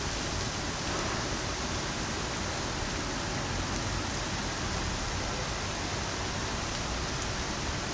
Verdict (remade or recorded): recorded